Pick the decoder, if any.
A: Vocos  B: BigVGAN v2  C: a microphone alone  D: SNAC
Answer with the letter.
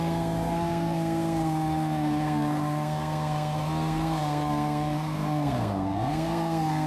D